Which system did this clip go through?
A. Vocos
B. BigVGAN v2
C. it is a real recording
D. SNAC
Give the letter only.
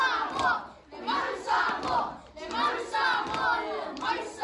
C